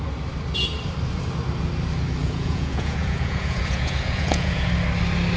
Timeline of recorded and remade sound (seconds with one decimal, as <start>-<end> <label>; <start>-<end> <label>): 0.0-2.2 recorded; 2.2-4.7 remade; 4.7-5.4 recorded